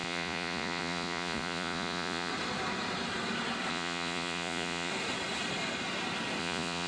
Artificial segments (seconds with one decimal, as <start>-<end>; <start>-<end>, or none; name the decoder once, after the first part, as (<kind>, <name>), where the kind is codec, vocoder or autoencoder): 0.0-2.3 (vocoder, Vocos); 3.7-4.9; 6.4-6.9